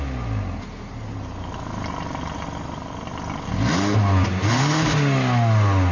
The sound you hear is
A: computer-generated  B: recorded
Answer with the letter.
B